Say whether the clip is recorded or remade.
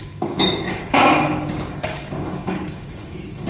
remade